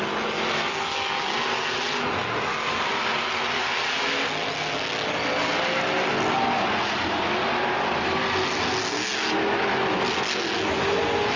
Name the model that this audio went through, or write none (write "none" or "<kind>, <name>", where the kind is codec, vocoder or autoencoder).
none